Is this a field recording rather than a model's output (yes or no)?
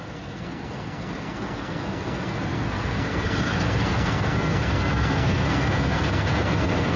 no